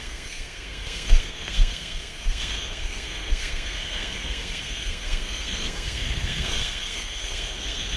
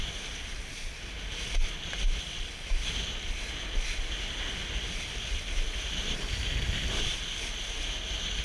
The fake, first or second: first